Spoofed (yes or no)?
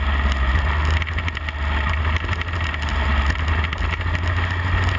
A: no